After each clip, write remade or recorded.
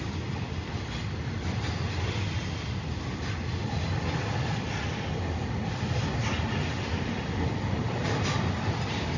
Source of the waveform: recorded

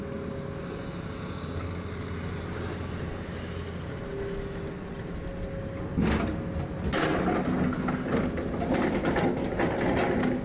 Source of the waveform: recorded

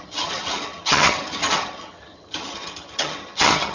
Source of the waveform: remade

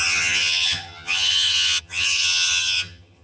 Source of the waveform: remade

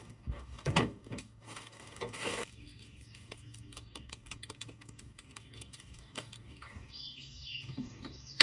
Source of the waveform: remade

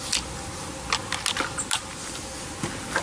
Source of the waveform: recorded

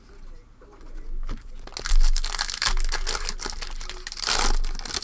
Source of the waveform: recorded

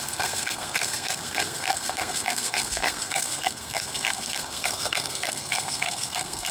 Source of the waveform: remade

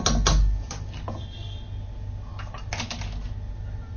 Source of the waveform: recorded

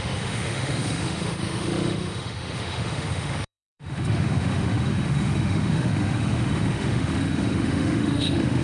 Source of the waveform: remade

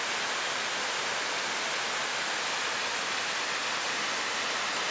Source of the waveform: recorded